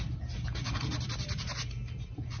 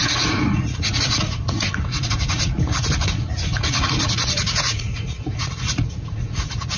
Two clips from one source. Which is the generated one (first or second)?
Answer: second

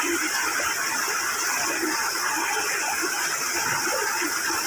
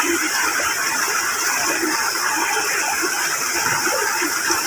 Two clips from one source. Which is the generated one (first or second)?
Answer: second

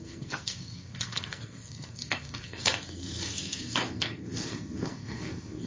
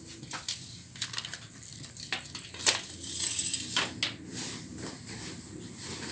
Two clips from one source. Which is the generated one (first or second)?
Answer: first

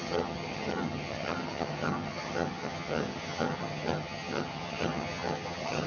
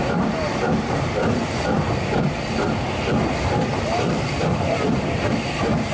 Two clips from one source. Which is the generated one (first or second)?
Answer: first